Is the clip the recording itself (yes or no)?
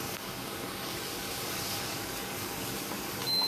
no